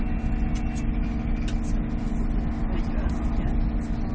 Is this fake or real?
real